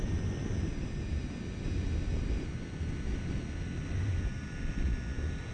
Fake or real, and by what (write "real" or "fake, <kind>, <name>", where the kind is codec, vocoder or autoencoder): real